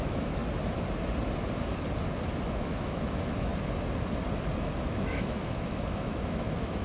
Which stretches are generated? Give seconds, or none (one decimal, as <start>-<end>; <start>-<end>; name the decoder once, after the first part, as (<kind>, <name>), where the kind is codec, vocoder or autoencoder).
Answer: 0.0-0.4 (autoencoder, DAC-VAE); 2.5-3.5; 4.6-6.8